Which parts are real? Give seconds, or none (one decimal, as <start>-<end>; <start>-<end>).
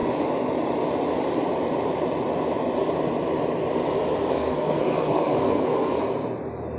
0.0-4.3; 6.0-6.8